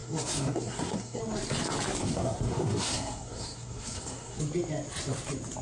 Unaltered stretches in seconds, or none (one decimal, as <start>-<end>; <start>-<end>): 1.2-2.0; 4.4-5.6